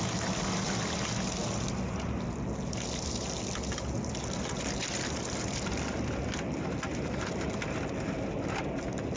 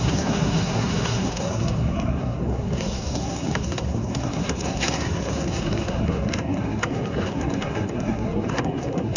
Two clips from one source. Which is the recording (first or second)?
first